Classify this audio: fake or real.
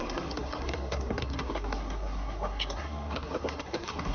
fake